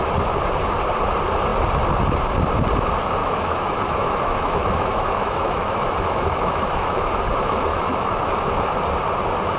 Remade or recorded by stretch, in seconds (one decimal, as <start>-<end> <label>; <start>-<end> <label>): 0.0-3.2 recorded; 3.2-7.1 remade; 7.1-7.7 recorded; 7.7-8.6 remade; 8.6-9.6 recorded